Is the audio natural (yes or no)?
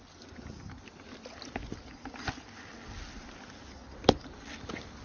yes